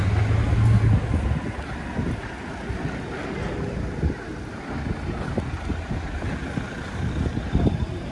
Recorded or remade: recorded